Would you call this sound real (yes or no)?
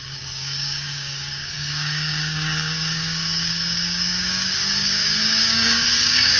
no